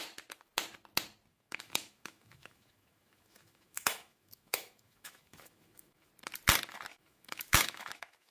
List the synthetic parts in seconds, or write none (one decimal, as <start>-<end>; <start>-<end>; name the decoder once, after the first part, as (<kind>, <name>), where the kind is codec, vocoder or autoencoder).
1.3-6.1 (autoencoder, DAC-VAE); 6.9-8.3